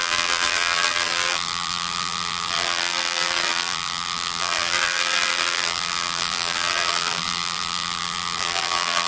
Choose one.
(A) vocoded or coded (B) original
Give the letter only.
A